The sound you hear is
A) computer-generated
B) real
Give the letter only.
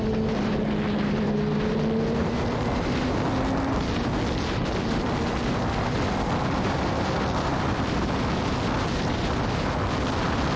B